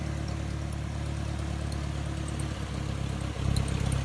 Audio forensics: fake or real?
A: real